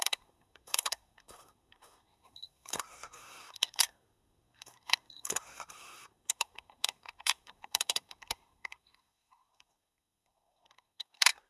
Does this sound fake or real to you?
fake